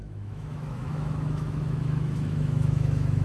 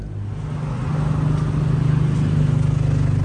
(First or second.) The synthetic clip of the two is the first